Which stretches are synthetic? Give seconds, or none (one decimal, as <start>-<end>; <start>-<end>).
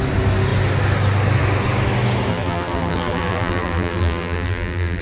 2.3-5.0